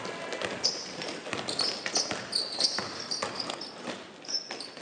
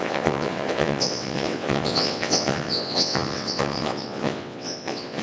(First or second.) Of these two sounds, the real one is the first